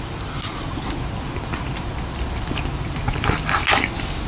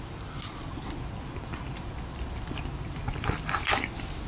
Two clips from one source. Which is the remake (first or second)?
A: second